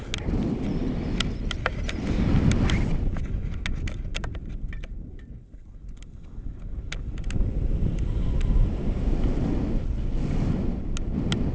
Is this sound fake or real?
real